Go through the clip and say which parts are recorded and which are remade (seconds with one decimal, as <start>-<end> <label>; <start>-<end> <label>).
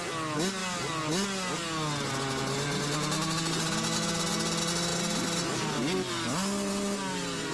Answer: 0.0-7.5 recorded